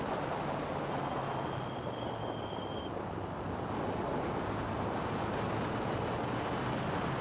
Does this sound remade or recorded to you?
recorded